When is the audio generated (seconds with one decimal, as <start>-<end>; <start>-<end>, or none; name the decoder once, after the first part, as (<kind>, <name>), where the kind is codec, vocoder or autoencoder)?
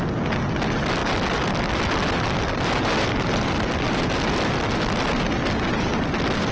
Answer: none